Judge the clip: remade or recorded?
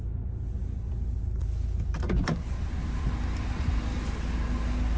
recorded